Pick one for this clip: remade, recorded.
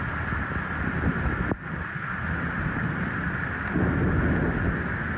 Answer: recorded